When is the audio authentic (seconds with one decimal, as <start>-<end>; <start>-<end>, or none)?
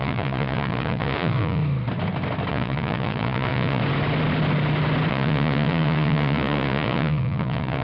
1.6-2.5; 3.8-5.1